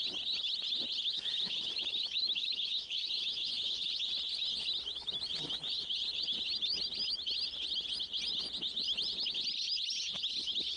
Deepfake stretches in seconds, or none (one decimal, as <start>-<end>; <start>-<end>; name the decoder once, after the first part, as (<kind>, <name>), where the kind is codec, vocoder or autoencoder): 1.1-3.9 (autoencoder, DAC-VAE)

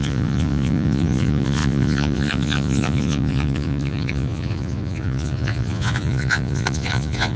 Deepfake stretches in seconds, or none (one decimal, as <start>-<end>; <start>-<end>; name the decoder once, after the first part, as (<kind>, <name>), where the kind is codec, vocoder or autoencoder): 0.0-7.4 (vocoder, Vocos)

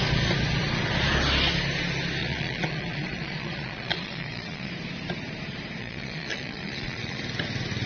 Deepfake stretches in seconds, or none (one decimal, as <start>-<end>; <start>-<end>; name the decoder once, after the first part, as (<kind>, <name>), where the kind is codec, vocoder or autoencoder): 2.2-4.7 (vocoder, Vocos); 5.8-7.2

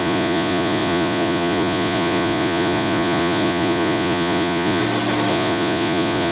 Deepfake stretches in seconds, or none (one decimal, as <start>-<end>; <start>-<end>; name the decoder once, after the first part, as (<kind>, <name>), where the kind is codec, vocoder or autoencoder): 0.0-4.8 (vocoder, Vocos); 5.3-6.3

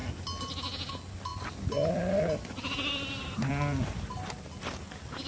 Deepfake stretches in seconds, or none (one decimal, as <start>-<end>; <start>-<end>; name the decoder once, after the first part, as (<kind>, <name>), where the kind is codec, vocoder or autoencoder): none

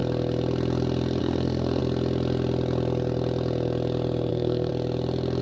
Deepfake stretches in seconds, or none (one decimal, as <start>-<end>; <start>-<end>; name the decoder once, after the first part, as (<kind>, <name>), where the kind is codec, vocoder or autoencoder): 1.2-1.8 (codec, SNAC); 4.3-4.7